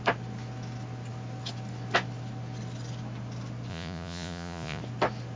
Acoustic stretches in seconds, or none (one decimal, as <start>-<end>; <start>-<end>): 0.0-3.7; 4.8-5.4